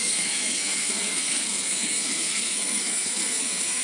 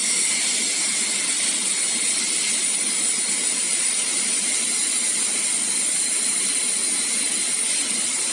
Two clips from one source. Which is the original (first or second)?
second